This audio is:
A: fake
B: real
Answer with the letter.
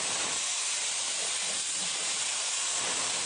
B